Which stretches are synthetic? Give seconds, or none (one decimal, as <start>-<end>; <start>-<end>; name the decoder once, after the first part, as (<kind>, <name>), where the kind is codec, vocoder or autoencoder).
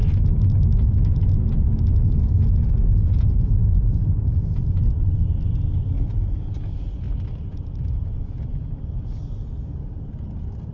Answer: 2.8-3.9 (vocoder, Vocos); 7.5-8.7